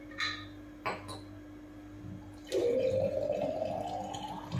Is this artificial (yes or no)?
no